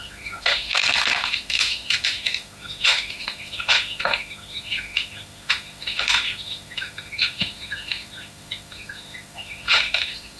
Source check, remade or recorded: remade